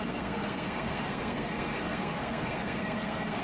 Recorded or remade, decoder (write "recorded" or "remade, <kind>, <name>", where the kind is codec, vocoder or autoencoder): remade, codec, SNAC